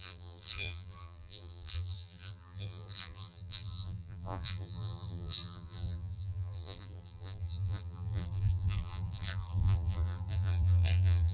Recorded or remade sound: remade